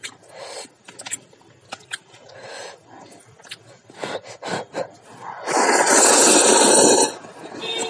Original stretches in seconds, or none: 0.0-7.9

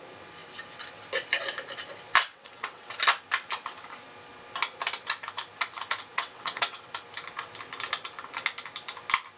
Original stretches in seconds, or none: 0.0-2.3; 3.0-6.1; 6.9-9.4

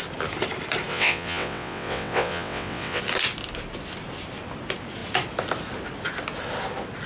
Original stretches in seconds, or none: 0.0-0.9; 3.0-7.1